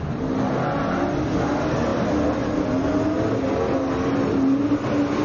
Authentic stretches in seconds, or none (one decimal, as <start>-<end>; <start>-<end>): 0.0-5.2